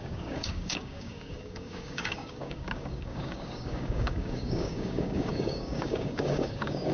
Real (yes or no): no